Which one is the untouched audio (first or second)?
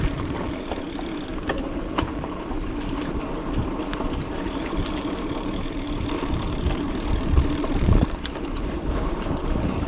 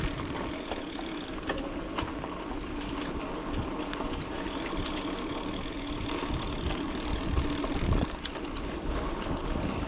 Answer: second